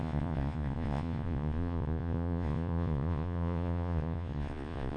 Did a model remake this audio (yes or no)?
yes